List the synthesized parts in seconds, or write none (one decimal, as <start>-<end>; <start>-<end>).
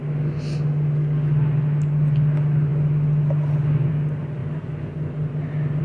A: none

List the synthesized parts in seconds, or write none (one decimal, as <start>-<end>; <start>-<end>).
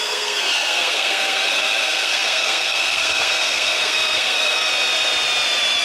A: 0.0-4.7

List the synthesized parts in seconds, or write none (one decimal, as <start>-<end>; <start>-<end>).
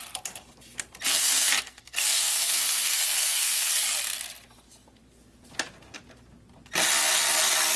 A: 1.1-3.7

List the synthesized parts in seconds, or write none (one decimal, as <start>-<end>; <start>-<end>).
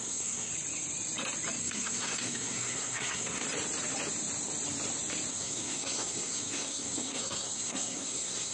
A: 0.0-0.5; 1.6-3.4; 5.3-8.5